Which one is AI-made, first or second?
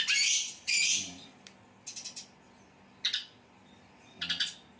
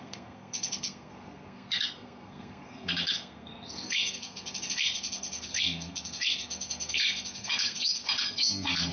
second